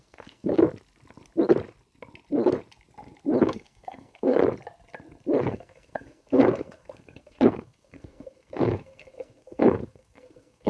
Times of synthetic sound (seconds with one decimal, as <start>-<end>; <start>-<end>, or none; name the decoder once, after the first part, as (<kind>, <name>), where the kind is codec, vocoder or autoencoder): 0.0-0.6 (codec, SNAC); 3.4-4.4; 5.4-10.7